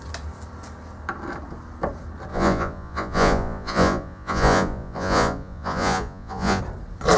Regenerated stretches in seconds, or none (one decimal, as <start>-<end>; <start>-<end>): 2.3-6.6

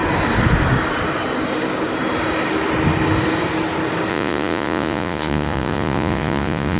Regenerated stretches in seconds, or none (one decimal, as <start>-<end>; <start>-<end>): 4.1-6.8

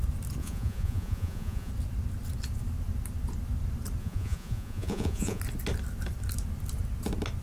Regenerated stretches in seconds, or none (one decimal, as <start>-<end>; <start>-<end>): 0.4-1.7; 4.0-5.4